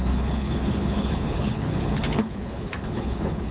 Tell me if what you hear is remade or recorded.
remade